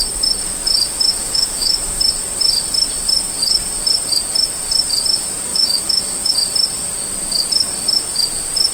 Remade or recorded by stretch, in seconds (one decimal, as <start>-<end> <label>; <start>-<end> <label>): 0.0-1.1 recorded; 1.1-2.0 remade; 2.0-5.5 recorded; 5.5-6.3 remade; 6.3-8.7 recorded